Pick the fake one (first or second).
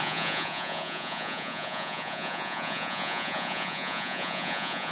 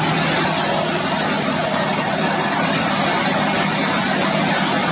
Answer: first